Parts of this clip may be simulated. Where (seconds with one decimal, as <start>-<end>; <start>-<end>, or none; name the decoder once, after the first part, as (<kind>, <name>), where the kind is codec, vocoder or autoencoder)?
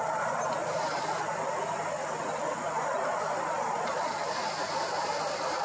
none